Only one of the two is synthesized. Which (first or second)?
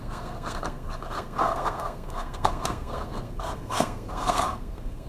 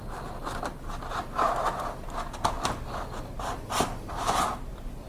first